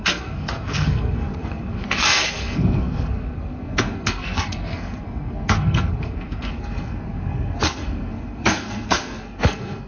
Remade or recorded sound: remade